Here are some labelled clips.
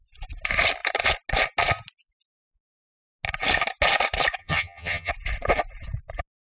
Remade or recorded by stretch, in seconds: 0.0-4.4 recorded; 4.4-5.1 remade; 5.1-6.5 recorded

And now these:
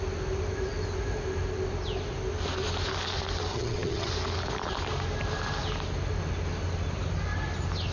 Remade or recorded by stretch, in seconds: 0.0-3.5 recorded; 3.5-4.1 remade; 4.1-7.9 recorded

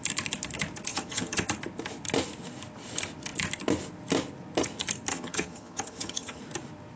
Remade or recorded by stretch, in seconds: 0.0-0.9 recorded; 0.9-1.5 remade; 1.5-5.1 recorded; 5.1-6.4 remade; 6.4-7.0 recorded

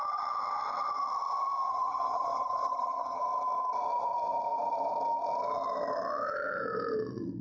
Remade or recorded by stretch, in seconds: 0.0-1.7 recorded; 1.7-3.2 remade; 3.2-7.4 recorded